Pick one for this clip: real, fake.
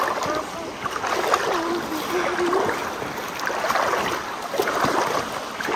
real